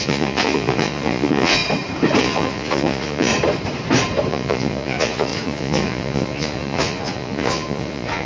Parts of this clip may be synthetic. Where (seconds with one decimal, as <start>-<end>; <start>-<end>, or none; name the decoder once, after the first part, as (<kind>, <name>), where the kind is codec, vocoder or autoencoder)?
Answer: 0.0-1.6 (vocoder, Vocos); 2.2-3.3; 4.3-8.3